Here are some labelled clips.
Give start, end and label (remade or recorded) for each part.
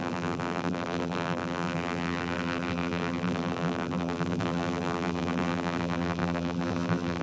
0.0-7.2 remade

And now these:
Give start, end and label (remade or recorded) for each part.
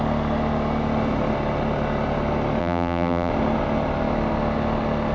0.0-2.6 recorded; 2.6-3.3 remade; 3.3-5.1 recorded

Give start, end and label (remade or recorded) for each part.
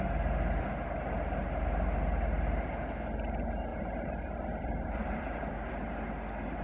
0.0-3.7 recorded; 3.7-5.7 remade; 5.7-6.6 recorded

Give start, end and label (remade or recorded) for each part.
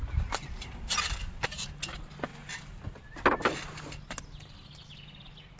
0.0-5.6 recorded